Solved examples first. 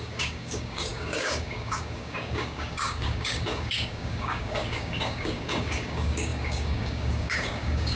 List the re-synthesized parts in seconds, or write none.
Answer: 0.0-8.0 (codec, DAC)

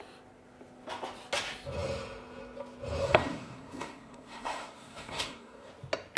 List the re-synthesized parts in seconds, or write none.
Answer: 3.0-5.7 (codec, SNAC)

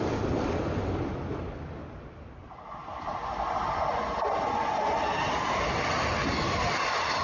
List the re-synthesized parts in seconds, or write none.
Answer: none

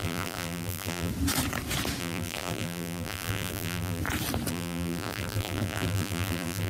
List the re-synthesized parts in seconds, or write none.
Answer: 0.0-1.1 (vocoder, BigVGAN v2); 2.0-4.0; 4.5-6.7

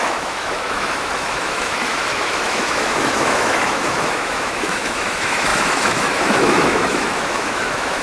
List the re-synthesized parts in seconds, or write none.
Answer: 0.0-8.0 (autoencoder, DAC-VAE)

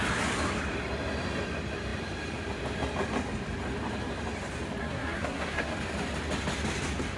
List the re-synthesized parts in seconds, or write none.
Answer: 4.8-5.7 (codec, SNAC)